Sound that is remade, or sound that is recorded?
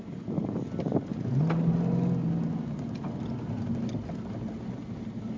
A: recorded